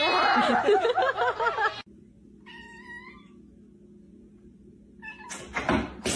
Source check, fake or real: real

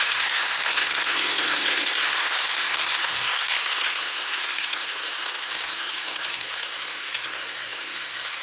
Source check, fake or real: fake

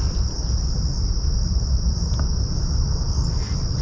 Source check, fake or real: real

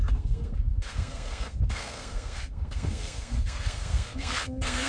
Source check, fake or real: fake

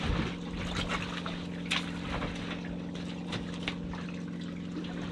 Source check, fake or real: real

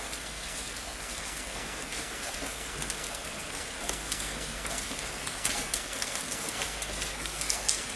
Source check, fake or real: fake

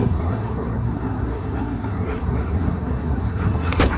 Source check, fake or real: fake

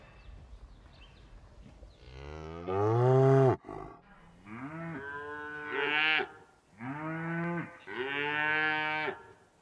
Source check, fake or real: real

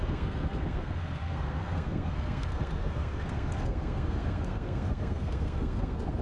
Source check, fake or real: fake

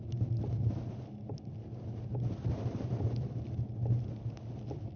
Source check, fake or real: real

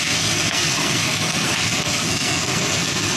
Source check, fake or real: fake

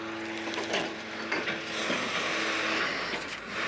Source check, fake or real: real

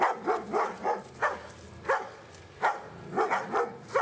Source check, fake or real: real